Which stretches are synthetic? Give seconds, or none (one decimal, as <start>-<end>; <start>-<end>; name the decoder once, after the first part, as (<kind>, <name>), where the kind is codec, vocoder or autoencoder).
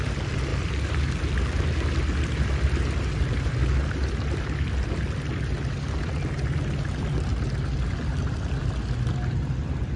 none